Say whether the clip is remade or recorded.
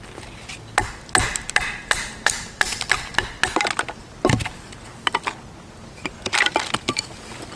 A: recorded